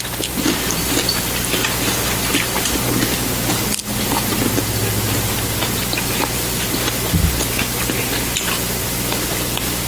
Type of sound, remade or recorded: recorded